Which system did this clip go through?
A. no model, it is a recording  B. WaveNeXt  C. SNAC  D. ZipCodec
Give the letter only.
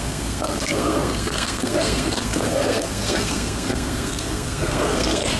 C